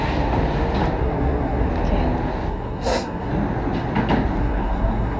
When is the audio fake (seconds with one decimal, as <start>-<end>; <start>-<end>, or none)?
1.0-1.7; 2.5-3.3; 4.4-5.2